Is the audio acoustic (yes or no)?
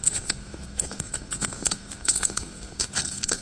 no